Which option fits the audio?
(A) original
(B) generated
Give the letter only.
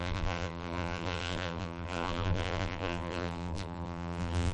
B